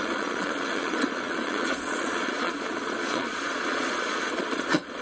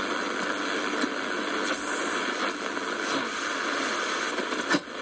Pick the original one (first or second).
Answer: second